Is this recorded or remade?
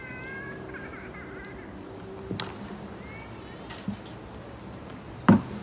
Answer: recorded